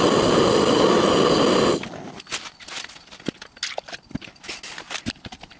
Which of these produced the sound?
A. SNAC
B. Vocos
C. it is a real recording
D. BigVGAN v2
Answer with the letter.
C